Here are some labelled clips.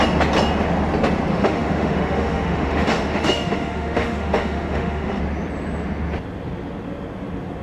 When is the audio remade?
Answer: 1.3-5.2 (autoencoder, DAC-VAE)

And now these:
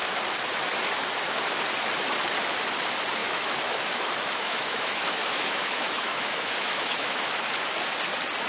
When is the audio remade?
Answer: 3.2-7.2 (autoencoder, DAC-VAE)

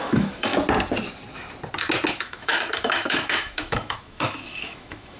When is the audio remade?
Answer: 0.0-0.5 (autoencoder, DAC-VAE); 2.1-5.2

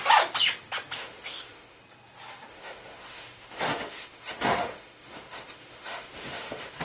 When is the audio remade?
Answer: 1.0-1.8 (autoencoder, DAC-VAE); 2.5-6.8